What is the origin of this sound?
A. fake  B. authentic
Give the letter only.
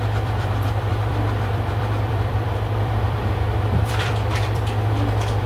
A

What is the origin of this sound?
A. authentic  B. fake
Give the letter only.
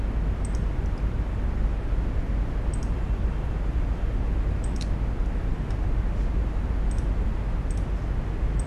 A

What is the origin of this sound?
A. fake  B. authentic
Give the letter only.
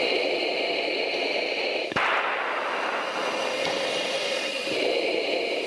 B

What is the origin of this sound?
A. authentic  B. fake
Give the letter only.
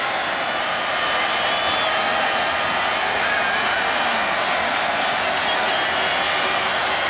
A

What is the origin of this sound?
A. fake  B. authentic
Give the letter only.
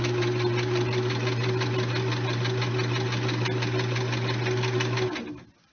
B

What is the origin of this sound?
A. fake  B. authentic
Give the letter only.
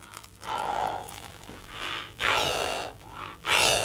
A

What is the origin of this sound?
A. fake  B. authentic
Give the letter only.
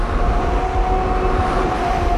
B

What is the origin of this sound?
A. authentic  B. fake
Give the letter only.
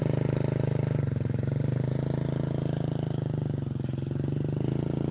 A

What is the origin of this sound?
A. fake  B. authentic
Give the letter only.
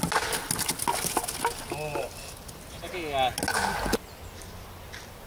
B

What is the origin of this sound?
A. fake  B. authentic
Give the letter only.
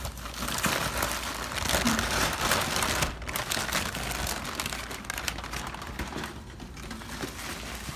B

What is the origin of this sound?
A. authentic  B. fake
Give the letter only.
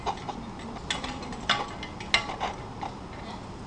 A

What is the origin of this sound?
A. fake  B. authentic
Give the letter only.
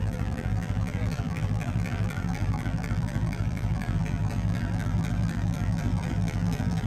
A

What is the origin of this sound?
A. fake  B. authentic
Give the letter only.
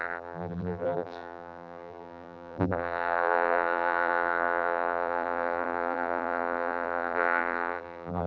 A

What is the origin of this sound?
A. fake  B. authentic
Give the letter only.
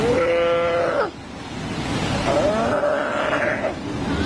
B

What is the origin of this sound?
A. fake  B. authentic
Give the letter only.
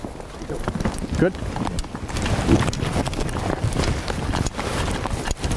B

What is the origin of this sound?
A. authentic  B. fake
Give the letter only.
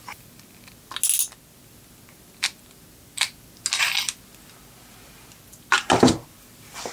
A